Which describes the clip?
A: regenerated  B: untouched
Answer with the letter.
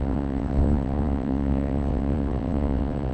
A